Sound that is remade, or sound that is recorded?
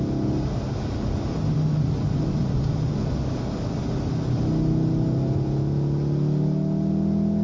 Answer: recorded